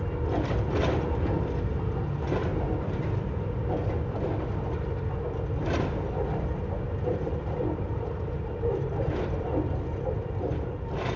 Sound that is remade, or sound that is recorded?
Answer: recorded